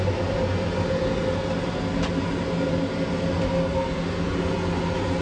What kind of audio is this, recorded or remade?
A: recorded